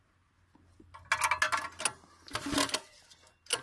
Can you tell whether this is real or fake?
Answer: real